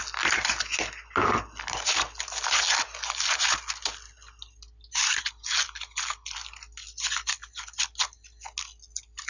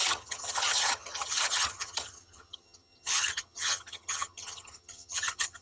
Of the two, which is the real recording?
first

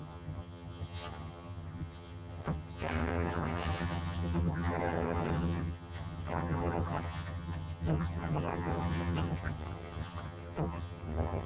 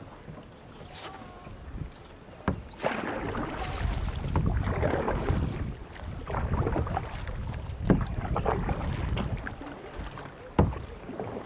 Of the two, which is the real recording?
second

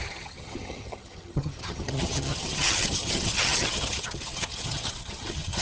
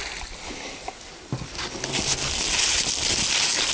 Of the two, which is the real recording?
second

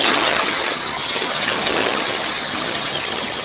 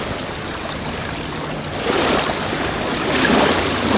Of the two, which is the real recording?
second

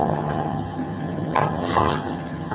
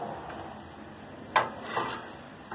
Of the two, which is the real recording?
second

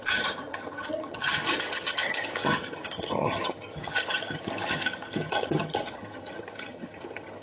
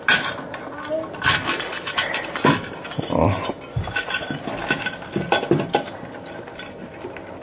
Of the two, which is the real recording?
second